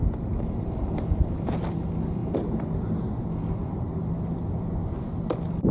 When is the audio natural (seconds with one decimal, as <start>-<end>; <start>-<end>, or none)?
0.7-2.2; 2.7-3.6; 4.1-5.7